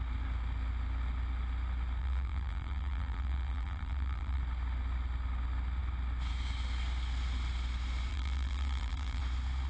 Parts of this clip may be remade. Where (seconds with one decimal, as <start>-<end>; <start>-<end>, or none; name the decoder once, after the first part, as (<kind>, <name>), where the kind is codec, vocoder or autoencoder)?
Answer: 2.0-4.4 (vocoder, BigVGAN v2); 8.1-9.2